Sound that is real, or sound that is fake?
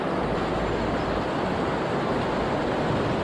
real